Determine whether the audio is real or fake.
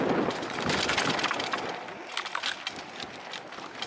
real